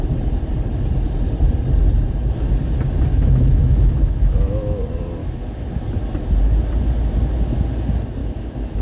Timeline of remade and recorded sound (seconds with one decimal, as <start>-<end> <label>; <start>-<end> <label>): 0.0-3.1 recorded; 3.1-4.8 remade; 4.8-5.2 recorded; 5.2-5.8 remade; 5.8-8.2 recorded; 8.2-8.8 remade